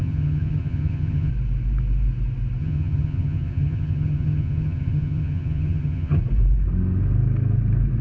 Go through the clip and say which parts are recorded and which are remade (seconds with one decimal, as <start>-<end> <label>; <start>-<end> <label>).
0.0-1.3 remade; 1.3-2.6 recorded; 2.6-6.2 remade; 6.2-8.0 recorded